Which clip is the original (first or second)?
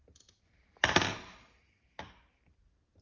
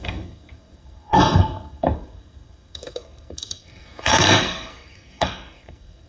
first